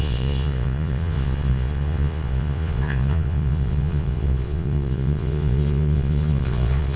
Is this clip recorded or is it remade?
remade